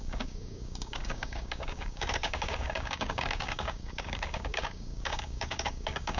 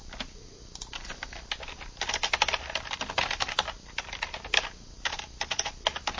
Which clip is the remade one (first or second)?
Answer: first